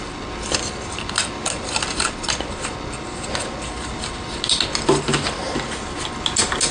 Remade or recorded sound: recorded